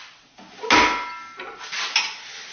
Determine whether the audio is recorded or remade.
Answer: recorded